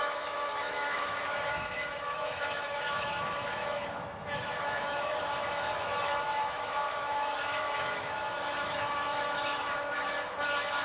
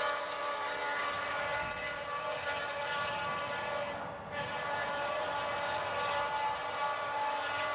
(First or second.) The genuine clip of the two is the second